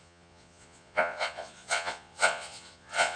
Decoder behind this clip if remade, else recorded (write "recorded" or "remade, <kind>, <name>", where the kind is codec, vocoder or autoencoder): remade, vocoder, Vocos